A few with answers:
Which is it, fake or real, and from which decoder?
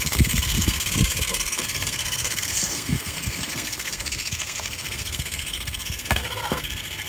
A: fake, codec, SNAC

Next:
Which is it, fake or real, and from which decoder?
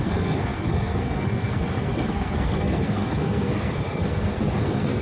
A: fake, codec, SNAC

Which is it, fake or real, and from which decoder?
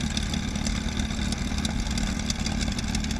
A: real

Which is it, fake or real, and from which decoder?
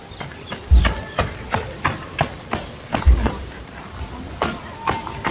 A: real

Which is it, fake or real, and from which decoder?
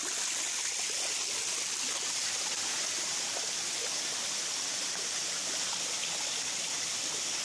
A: real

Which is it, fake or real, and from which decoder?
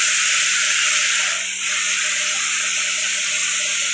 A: fake, vocoder, BigVGAN v2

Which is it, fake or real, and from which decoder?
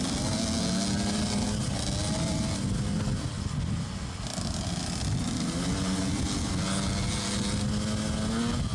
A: real